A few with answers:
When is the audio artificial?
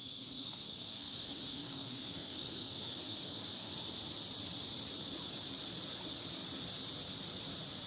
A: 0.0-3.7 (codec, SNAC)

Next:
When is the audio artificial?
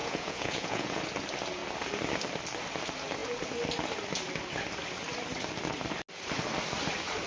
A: 0.0-1.0 (vocoder, Vocos)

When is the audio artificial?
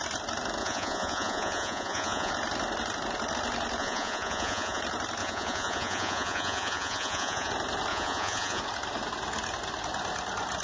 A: 0.6-2.3 (vocoder, Vocos); 3.8-4.8; 5.2-7.5; 7.9-8.6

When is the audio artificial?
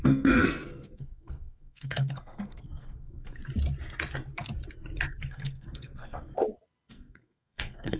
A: 0.0-3.4 (codec, SNAC); 5.2-6.3; 6.9-8.0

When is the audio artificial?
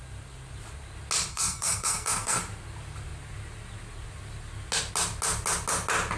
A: 1.3-2.4 (codec, SNAC)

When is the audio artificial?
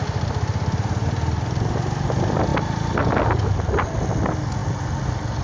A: none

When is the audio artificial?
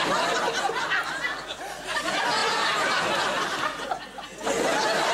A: none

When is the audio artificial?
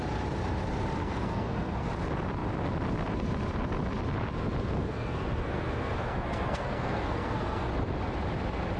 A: 1.0-1.9 (codec, SNAC); 4.8-7.7